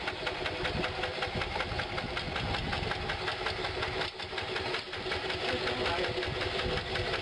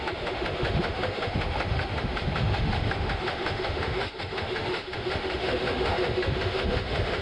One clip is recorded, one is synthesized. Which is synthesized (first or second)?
second